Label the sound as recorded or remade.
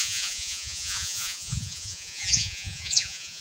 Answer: remade